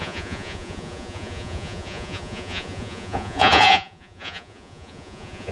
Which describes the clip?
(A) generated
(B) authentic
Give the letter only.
A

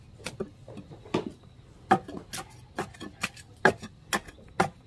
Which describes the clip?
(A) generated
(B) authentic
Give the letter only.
B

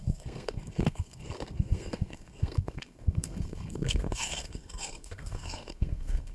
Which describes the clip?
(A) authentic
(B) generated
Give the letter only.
B